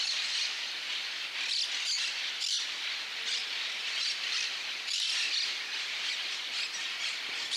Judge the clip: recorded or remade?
recorded